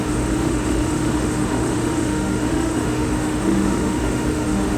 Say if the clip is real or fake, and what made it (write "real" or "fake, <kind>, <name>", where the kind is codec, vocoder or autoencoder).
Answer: fake, autoencoder, DAC-VAE